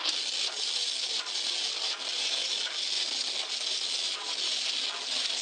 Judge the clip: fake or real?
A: real